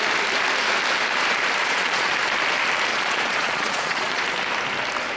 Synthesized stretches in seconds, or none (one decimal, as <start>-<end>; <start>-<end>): 1.6-2.1; 2.9-4.2